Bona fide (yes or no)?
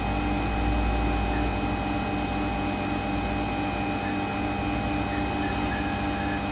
yes